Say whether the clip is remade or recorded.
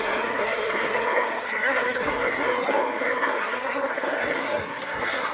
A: remade